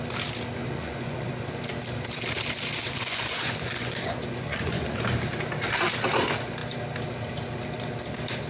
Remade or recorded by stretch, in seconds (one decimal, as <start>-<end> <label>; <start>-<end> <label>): 0.0-0.6 recorded; 0.6-1.3 remade; 1.3-2.8 recorded; 2.8-5.0 remade; 5.0-8.5 recorded